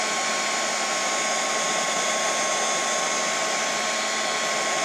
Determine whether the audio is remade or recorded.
recorded